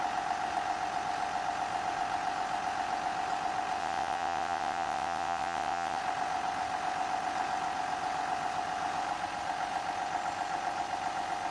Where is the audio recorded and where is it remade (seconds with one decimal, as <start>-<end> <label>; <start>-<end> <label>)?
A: 0.0-3.8 recorded; 3.8-6.0 remade; 6.0-11.5 recorded